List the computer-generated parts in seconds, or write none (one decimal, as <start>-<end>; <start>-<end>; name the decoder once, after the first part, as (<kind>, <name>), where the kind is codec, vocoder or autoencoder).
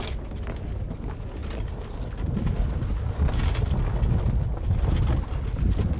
none